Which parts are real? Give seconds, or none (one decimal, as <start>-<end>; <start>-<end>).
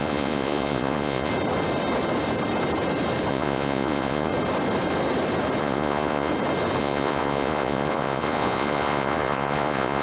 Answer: 1.3-3.3; 4.3-5.6; 6.3-6.8